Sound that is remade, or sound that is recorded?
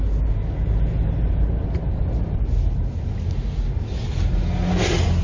recorded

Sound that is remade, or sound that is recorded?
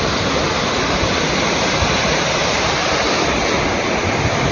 remade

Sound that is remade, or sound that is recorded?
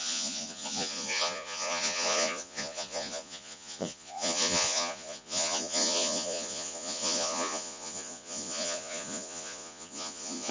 remade